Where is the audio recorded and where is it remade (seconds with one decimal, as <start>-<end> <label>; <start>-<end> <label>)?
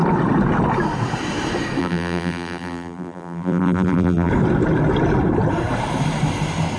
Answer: 0.0-1.8 recorded; 1.8-4.3 remade; 4.3-6.8 recorded